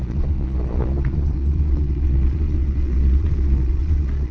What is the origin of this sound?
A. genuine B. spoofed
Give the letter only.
B